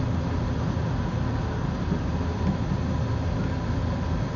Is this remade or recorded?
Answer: recorded